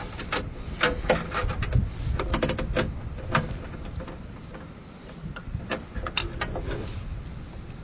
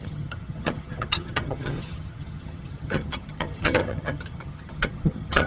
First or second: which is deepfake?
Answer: second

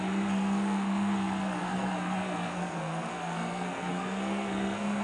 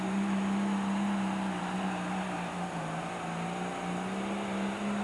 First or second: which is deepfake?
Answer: first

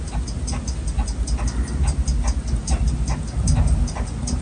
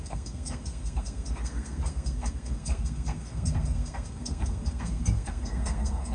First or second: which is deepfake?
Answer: second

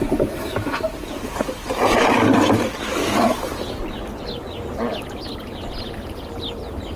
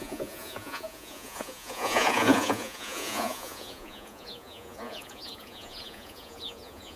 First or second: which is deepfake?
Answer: second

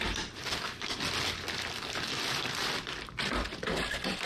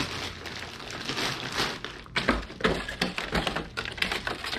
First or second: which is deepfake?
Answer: first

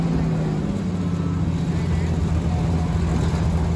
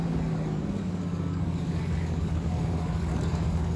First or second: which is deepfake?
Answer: second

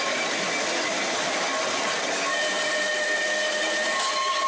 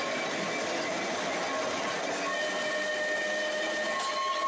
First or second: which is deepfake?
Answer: first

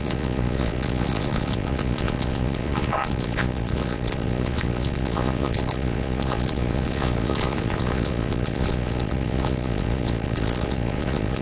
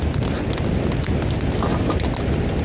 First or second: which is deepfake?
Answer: first